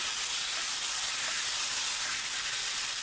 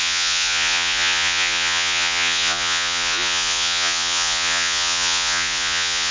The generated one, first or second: second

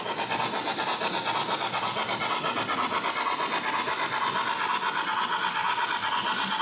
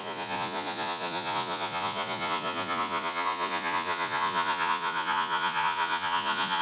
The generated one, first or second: second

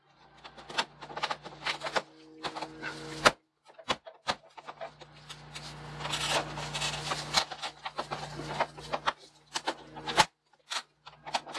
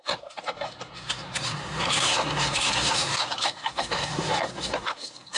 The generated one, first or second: second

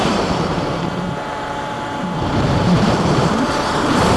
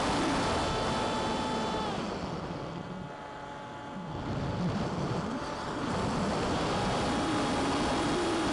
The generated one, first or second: first